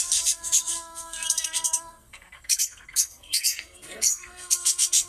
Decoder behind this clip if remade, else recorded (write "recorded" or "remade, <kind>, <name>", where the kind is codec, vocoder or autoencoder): remade, codec, SNAC